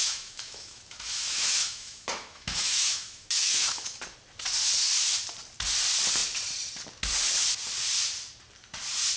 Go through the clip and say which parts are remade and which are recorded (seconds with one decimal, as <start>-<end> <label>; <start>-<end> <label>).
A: 0.0-4.0 remade; 4.0-9.2 recorded